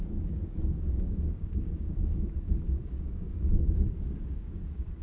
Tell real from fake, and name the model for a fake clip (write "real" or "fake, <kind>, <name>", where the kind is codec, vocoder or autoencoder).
fake, codec, DAC